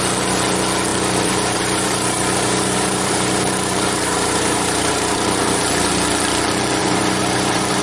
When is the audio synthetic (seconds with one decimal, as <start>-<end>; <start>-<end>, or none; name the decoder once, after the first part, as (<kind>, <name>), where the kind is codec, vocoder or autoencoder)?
0.9-5.6 (vocoder, BigVGAN v2); 6.8-7.8